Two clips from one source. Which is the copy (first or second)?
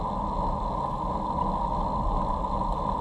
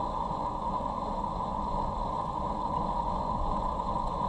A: second